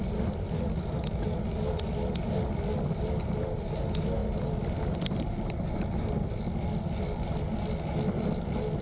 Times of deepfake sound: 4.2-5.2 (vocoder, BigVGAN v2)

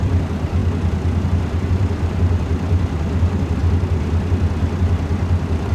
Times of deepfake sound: 0.0-0.6 (vocoder, BigVGAN v2); 1.4-3.6; 4.6-5.7

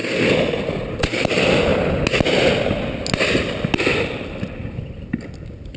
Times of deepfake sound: 0.8-1.7 (vocoder, BigVGAN v2); 5.1-5.8

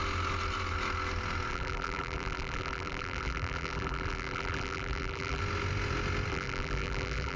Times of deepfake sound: 1.5-5.4 (vocoder, BigVGAN v2); 6.3-7.4

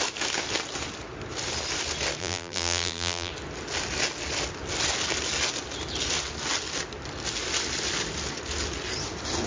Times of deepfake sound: 2.2-3.3 (vocoder, BigVGAN v2)

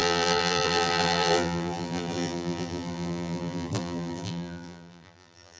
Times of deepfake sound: 0.0-5.6 (vocoder, BigVGAN v2)

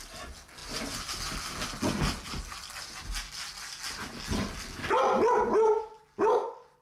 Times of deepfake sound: none